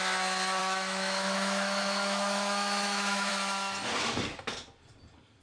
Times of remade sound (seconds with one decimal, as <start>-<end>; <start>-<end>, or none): 0.6-3.3